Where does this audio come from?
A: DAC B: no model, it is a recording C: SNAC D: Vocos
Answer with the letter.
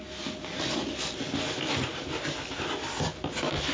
B